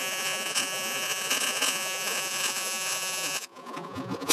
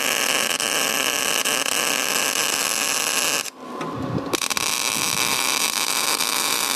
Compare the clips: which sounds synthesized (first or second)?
first